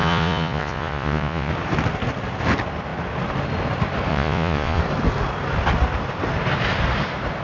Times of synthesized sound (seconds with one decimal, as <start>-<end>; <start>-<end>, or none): 0.0-1.5; 4.1-4.8